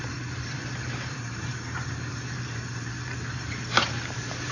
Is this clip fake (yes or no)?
yes